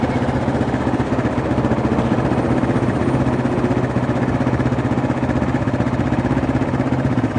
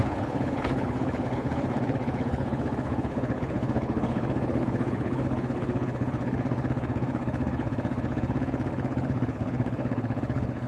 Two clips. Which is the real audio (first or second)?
first